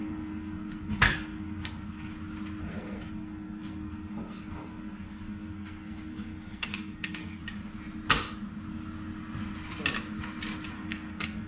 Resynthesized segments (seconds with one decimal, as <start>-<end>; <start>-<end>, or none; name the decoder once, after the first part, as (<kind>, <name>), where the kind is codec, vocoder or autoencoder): 0.0-2.1 (codec, SNAC); 2.6-7.4; 10.7-11.5

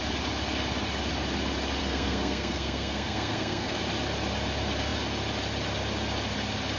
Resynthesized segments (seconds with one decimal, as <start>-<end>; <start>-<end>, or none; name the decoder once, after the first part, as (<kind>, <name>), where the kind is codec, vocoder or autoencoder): 1.8-3.8 (codec, SNAC)

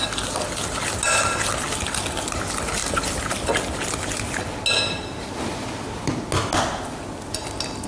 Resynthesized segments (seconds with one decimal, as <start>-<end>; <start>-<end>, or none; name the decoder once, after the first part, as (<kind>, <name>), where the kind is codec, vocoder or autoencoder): none

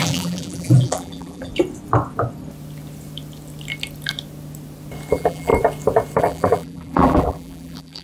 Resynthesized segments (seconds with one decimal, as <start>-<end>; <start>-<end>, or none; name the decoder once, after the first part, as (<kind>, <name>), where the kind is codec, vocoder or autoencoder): 0.0-1.5 (vocoder, BigVGAN v2); 5.1-5.5; 6.2-8.0

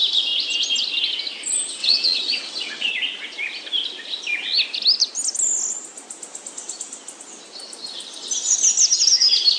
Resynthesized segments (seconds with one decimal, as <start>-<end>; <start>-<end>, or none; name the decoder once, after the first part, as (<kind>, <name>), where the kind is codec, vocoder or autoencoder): 1.8-2.9 (vocoder, WaveNeXt)